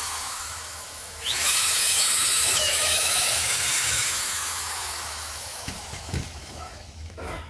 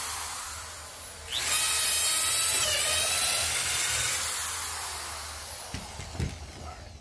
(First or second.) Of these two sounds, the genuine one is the second